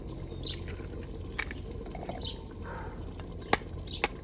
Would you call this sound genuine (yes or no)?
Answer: yes